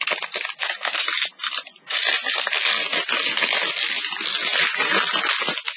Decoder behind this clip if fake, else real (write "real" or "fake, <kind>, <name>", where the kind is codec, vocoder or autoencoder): real